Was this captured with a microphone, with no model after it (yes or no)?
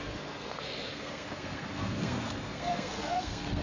no